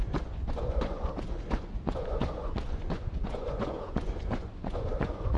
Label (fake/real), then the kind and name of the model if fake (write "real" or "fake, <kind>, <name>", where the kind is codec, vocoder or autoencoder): fake, vocoder, Vocos